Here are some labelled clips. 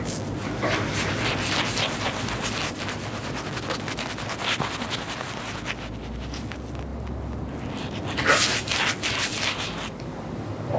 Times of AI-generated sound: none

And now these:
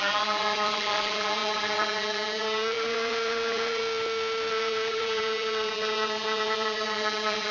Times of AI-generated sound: 0.0-3.8 (vocoder, BigVGAN v2); 4.5-7.5

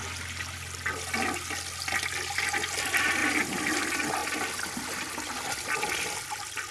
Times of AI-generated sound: none

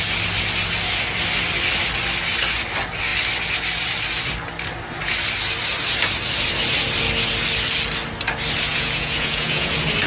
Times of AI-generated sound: 8.7-9.7 (vocoder, Vocos)